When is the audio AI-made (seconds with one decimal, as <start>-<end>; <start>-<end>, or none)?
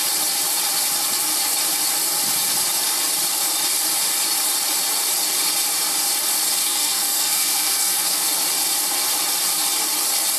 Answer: 6.6-8.4